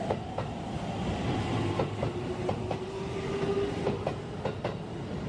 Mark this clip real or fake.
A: real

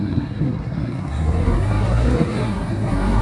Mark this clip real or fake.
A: fake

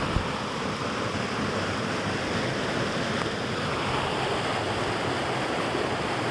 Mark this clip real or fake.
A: real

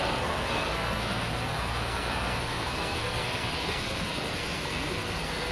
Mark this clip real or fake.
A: fake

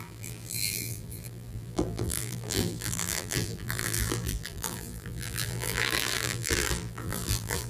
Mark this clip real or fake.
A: fake